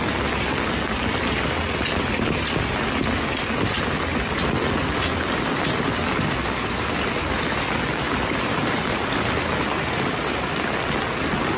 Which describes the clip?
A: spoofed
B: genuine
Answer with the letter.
B